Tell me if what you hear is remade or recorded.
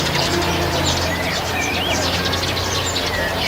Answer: recorded